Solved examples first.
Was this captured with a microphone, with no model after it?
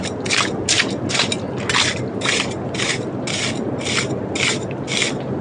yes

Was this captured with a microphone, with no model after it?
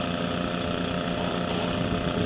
yes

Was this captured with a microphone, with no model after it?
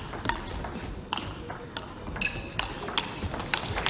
yes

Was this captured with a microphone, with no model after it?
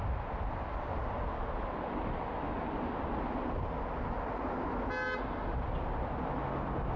yes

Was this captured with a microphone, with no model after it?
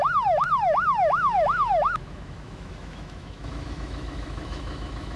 no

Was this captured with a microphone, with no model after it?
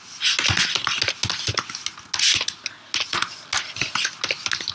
yes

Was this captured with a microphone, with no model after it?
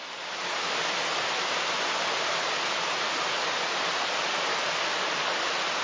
yes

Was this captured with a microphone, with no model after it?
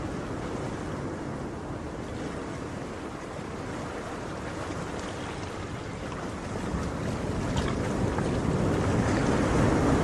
yes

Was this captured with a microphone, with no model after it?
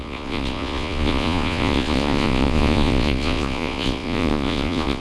no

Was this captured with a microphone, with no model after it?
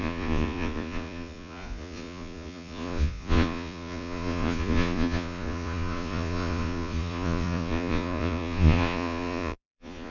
no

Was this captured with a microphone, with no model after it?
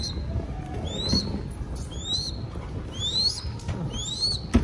yes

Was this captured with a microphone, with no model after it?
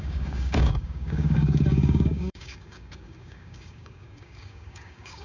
no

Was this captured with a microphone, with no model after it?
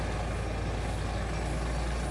yes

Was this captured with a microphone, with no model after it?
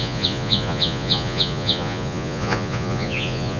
no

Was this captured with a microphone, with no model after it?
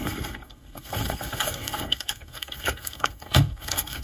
no